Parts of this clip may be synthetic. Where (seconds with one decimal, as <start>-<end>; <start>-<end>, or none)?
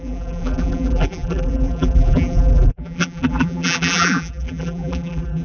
0.0-5.4